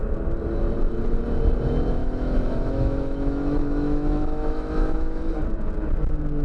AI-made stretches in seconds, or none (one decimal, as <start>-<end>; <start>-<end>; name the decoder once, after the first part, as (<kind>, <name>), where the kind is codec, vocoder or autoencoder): 2.0-5.2 (autoencoder, DAC-VAE)